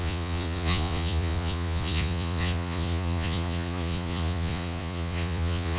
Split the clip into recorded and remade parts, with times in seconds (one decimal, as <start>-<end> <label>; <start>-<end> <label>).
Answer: 0.0-5.8 remade

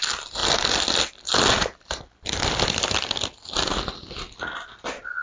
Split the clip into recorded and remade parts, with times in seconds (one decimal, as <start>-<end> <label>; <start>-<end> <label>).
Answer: 0.0-0.4 recorded; 0.4-2.9 remade; 2.9-5.2 recorded

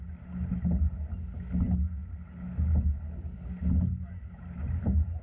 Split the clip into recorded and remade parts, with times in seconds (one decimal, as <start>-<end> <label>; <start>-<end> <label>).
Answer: 0.0-5.2 recorded